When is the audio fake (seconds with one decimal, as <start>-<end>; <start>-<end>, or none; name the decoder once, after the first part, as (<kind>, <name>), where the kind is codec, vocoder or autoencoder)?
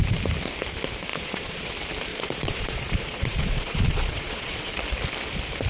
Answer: 1.1-1.7 (vocoder, Vocos); 2.1-4.7